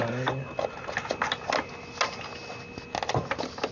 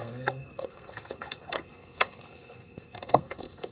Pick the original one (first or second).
first